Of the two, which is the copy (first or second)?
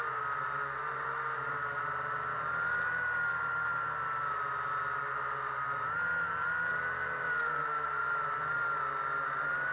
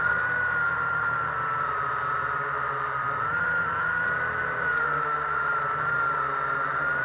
second